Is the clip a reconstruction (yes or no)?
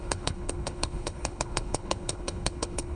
yes